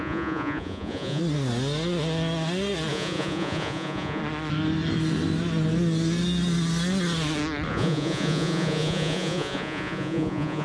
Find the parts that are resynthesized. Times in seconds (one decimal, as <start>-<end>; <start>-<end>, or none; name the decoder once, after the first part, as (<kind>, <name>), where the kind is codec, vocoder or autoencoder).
0.0-1.2 (vocoder, Vocos); 2.9-4.2; 7.7-10.6